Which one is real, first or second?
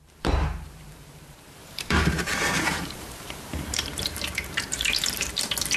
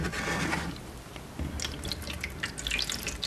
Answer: second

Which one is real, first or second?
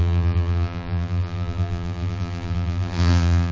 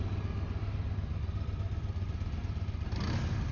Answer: second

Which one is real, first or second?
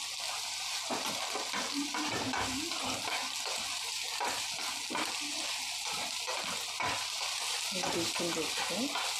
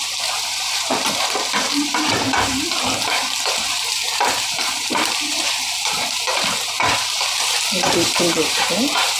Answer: first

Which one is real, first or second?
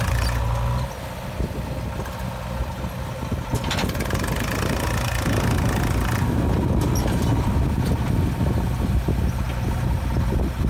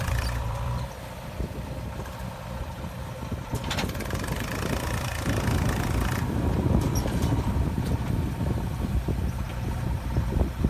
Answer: first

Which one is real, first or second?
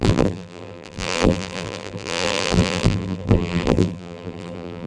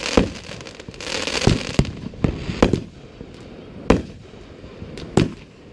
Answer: second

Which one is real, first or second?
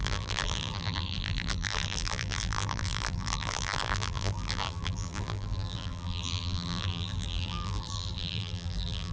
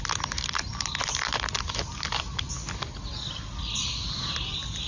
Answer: second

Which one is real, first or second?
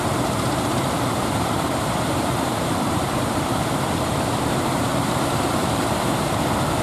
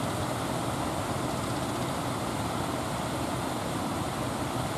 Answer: second